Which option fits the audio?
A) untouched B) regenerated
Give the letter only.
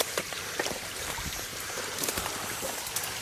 B